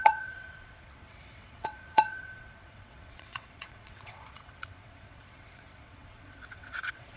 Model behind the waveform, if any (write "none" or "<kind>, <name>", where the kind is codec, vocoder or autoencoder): vocoder, WaveNeXt